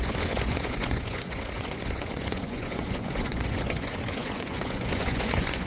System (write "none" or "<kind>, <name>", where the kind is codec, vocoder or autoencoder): vocoder, Vocos